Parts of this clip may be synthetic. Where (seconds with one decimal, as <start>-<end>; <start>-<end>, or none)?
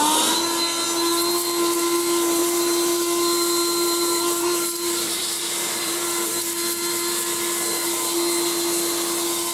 2.4-6.4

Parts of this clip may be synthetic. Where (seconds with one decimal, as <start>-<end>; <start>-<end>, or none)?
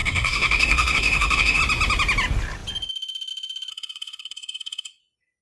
0.0-1.6; 3.7-5.0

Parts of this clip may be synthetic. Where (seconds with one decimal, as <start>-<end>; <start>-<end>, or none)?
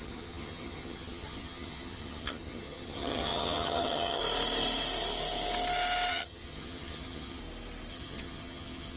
0.0-4.2; 6.1-7.4; 7.9-9.0